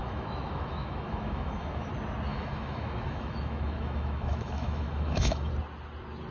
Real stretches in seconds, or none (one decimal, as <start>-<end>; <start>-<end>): 1.9-2.3; 5.5-6.3